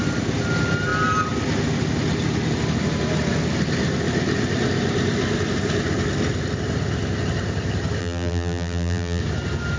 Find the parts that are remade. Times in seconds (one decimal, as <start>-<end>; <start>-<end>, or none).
8.0-9.2